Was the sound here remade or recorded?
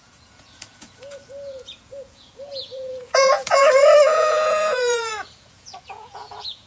remade